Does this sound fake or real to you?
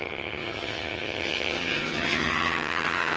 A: fake